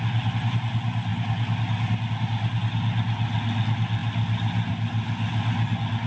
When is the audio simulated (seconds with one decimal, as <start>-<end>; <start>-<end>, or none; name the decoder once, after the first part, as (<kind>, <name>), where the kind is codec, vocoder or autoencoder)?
none